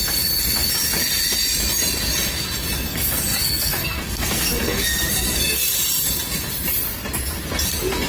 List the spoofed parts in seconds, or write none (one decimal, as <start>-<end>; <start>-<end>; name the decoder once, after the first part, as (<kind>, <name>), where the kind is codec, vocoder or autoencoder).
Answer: 2.9-5.4 (codec, SNAC)